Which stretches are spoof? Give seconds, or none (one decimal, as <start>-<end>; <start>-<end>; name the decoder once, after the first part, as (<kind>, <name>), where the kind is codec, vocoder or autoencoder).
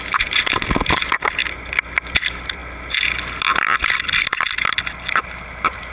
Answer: 0.0-1.4 (vocoder, BigVGAN v2); 2.2-5.9